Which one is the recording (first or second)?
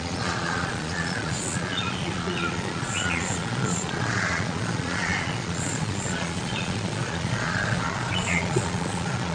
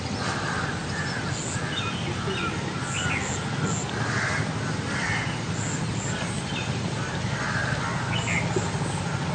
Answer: second